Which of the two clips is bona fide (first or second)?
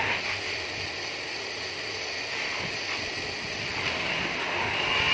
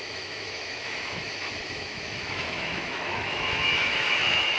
first